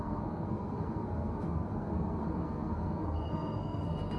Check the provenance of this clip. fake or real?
fake